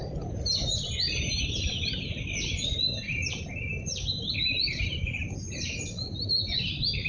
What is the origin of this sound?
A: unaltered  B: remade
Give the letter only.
B